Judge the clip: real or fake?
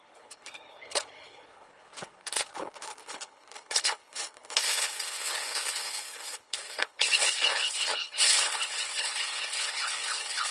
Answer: fake